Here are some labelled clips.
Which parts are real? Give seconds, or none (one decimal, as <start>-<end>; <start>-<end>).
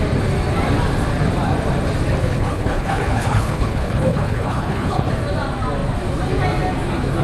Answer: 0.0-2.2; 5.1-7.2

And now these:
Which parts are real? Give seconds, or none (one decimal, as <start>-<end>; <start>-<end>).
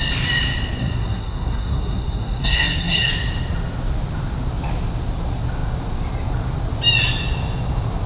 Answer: 0.0-0.8; 3.1-8.1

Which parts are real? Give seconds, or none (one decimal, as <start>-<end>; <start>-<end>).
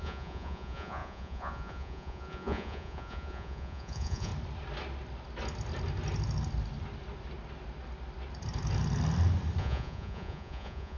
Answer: 4.3-9.6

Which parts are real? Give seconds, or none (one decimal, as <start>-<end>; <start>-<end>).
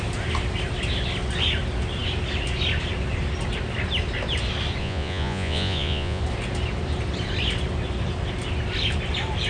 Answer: 0.0-4.8; 6.2-9.5